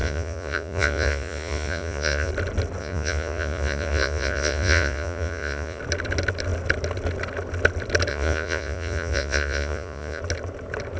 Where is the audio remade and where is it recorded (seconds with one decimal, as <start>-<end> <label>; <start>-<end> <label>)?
0.0-2.3 remade; 2.3-2.8 recorded; 2.8-5.8 remade; 5.8-8.1 recorded; 8.1-10.2 remade; 10.2-11.0 recorded

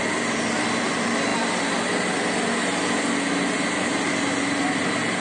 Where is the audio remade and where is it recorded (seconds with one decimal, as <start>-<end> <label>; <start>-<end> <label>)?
0.0-5.2 recorded

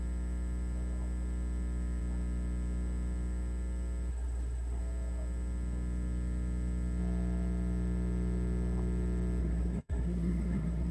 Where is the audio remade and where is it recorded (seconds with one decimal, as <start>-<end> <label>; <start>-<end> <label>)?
0.0-4.1 recorded; 4.1-4.8 remade; 4.8-9.4 recorded; 9.4-10.9 remade

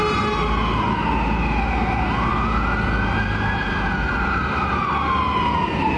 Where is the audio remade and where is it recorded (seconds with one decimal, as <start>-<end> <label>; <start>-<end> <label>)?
0.0-6.0 recorded

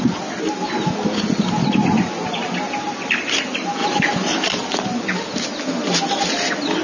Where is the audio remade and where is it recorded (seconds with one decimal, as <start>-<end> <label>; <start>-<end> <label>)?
0.0-3.8 recorded; 3.8-4.5 remade; 4.5-6.8 recorded

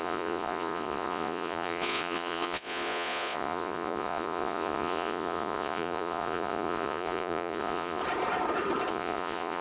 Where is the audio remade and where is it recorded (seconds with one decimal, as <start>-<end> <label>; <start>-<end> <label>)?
0.0-8.0 remade; 8.0-8.9 recorded; 8.9-9.6 remade

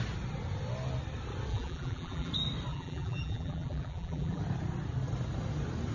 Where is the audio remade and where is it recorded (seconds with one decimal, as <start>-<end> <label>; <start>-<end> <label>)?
0.0-1.5 recorded; 1.5-2.3 remade; 2.3-2.7 recorded; 2.7-4.4 remade; 4.4-5.9 recorded

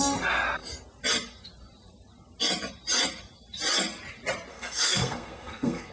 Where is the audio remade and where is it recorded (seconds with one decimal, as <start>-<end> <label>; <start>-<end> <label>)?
0.0-4.5 recorded; 4.5-5.9 remade